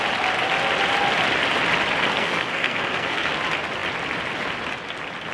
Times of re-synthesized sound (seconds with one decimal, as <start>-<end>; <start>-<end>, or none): 2.1-3.3

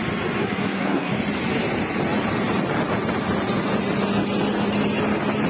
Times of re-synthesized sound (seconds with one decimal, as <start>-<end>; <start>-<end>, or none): 0.4-1.1

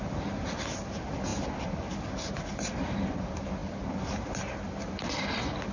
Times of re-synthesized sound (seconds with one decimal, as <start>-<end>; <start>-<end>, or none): none

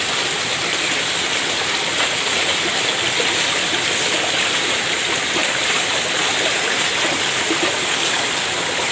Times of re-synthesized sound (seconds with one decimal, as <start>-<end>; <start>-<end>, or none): none

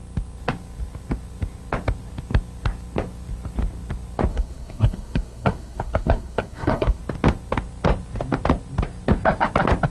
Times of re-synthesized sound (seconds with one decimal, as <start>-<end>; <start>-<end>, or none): 4.3-7.0